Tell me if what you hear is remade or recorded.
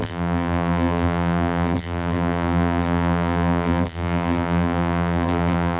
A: remade